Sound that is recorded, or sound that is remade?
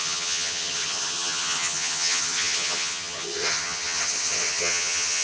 remade